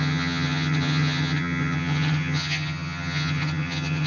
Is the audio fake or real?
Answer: fake